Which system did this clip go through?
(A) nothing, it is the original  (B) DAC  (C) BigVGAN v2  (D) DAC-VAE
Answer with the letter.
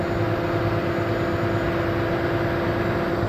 A